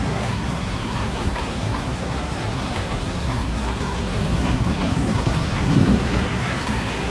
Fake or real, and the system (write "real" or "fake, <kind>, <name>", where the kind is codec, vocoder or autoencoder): fake, codec, SNAC